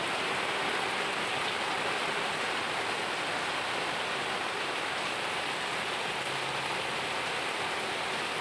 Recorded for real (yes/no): yes